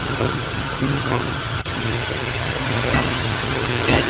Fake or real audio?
fake